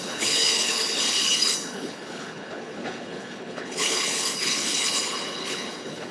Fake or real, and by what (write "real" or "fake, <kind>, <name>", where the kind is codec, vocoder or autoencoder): fake, codec, HILCodec